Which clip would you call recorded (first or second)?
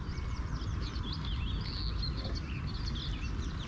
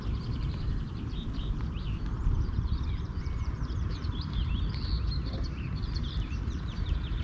first